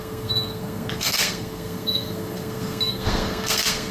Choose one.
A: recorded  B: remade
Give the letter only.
B